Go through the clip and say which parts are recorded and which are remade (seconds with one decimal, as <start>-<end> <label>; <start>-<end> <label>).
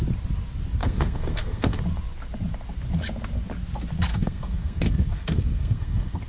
0.0-0.8 recorded; 0.8-1.8 remade; 1.8-4.1 recorded; 4.1-6.3 remade